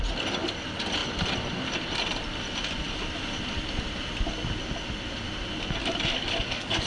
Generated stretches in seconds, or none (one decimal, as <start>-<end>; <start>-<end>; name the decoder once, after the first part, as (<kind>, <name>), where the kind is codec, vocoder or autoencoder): 5.8-6.9 (codec, DAC)